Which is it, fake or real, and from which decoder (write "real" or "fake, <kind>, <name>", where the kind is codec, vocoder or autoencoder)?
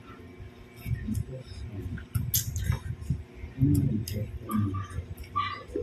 real